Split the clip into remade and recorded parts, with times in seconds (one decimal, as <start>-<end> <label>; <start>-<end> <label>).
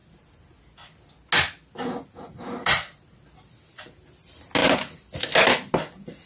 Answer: 0.0-6.3 recorded